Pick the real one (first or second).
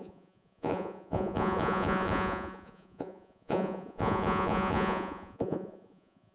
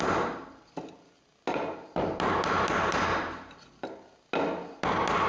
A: second